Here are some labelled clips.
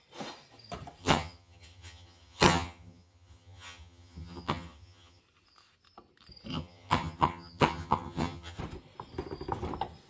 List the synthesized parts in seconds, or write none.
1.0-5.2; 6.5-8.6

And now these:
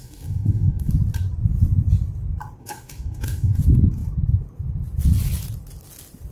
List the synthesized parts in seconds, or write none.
0.0-0.9; 2.6-3.6

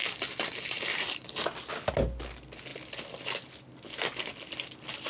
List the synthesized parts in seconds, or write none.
0.0-1.3